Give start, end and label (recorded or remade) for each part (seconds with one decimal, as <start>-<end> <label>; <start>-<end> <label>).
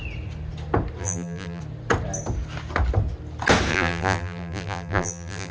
0.0-1.0 recorded; 1.0-1.6 remade; 1.6-3.7 recorded; 3.7-5.5 remade